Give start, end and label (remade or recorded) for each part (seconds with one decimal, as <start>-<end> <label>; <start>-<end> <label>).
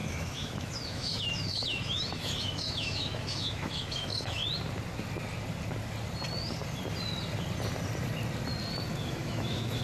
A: 0.0-4.4 remade; 4.4-9.1 recorded; 9.1-9.8 remade